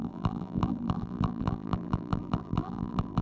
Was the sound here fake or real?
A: fake